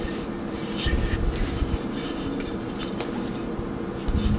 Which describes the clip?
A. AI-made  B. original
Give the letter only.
A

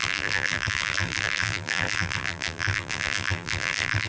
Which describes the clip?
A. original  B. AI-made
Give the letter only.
B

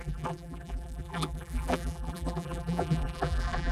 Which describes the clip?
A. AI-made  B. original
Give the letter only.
A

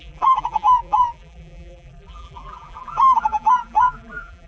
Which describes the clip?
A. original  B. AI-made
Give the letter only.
B